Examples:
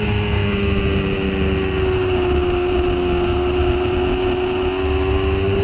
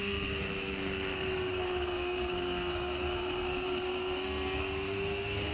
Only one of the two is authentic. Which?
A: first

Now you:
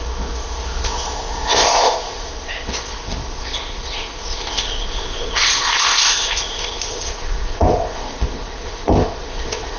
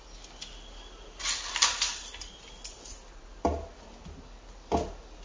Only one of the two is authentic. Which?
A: second